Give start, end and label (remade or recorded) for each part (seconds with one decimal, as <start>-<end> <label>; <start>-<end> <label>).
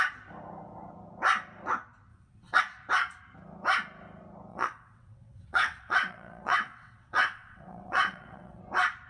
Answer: 0.0-2.1 recorded; 2.1-2.6 remade; 2.6-4.5 recorded; 4.5-8.6 remade; 8.6-9.1 recorded